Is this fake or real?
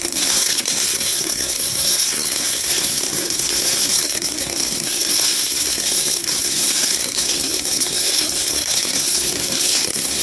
fake